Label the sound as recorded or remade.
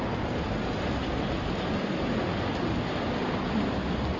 recorded